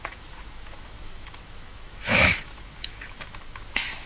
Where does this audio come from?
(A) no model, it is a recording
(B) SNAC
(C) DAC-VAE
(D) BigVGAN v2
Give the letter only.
C